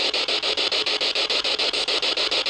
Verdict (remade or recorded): recorded